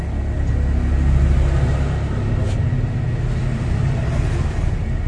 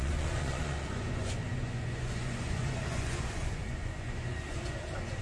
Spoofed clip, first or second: second